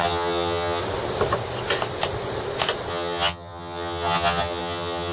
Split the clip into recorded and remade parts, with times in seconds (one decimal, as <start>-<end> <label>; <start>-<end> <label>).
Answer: 0.0-0.8 remade; 0.8-2.9 recorded; 2.9-5.1 remade